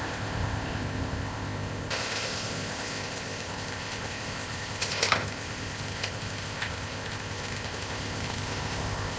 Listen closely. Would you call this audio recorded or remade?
remade